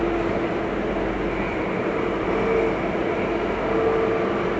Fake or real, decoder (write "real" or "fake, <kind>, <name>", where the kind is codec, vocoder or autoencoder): real